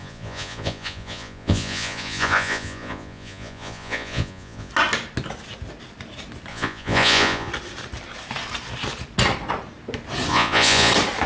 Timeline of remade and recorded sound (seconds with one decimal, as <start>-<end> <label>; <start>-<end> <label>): 0.0-4.7 remade; 4.7-6.5 recorded; 6.5-7.5 remade; 7.5-10.3 recorded; 10.3-10.9 remade; 10.9-11.3 recorded